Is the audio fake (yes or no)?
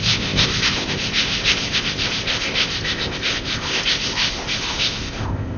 yes